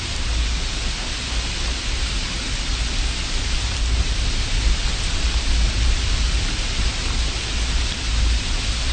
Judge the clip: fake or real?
real